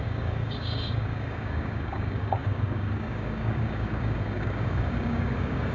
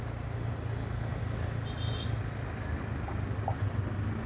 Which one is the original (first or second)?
second